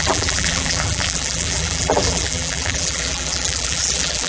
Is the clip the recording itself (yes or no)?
no